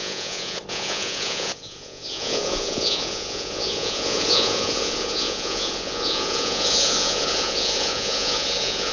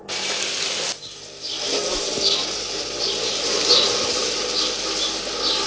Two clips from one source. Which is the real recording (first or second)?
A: second